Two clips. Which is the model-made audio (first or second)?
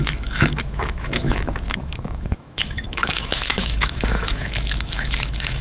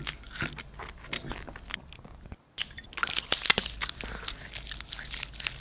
first